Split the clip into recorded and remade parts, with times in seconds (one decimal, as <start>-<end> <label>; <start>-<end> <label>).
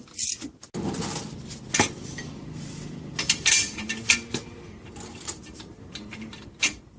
0.0-2.1 recorded; 2.1-6.3 remade; 6.3-7.0 recorded